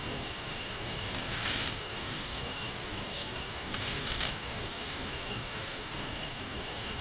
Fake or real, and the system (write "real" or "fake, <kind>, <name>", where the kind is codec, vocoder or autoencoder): fake, codec, DAC